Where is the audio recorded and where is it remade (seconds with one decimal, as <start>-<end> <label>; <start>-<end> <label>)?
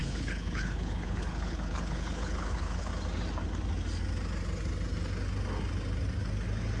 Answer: 0.0-2.9 remade; 2.9-6.8 recorded